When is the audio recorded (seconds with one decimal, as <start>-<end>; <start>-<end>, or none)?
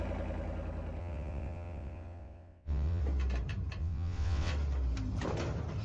0.0-1.0; 3.0-3.8; 4.5-5.8